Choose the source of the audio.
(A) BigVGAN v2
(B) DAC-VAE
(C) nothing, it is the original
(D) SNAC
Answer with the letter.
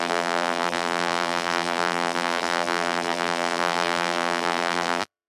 A